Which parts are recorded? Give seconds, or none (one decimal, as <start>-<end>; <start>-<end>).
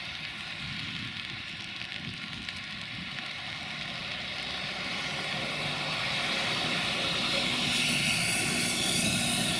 0.0-4.0; 6.6-9.6